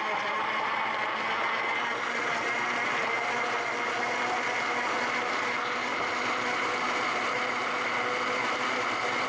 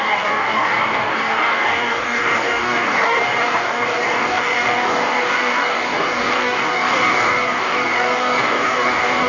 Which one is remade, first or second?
second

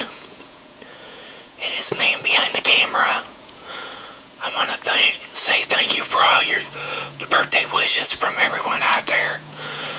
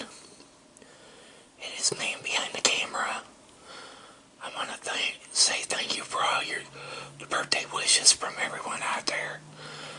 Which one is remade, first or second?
first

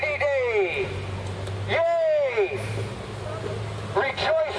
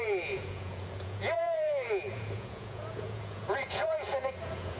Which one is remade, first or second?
second